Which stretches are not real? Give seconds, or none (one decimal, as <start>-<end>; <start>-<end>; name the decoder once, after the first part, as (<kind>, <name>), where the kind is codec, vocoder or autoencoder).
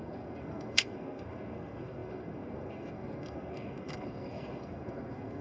0.0-5.4 (codec, SNAC)